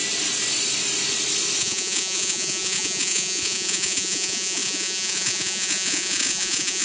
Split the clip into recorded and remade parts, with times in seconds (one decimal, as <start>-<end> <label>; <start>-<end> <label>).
0.0-1.6 recorded; 1.6-6.8 remade